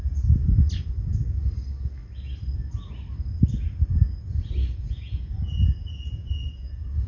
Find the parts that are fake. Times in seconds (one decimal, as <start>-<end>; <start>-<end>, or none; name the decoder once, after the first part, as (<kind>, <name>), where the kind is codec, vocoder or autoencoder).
0.0-0.4 (vocoder, Vocos); 4.7-7.1